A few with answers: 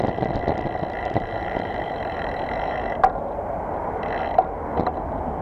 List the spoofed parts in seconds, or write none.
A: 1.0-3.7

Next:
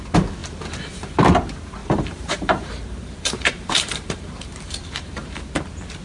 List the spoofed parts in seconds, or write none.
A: 1.8-5.4